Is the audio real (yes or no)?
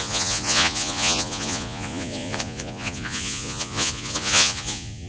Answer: no